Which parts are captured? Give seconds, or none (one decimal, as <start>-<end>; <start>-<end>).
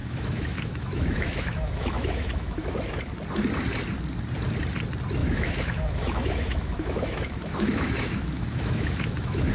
2.8-5.2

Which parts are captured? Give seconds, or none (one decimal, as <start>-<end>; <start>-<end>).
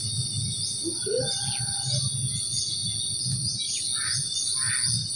0.0-5.2